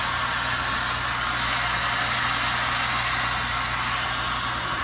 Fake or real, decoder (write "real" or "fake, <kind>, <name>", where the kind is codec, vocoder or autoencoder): real